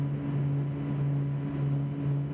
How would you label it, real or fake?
real